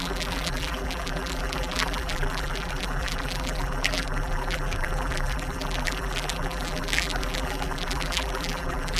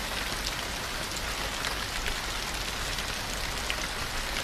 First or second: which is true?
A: second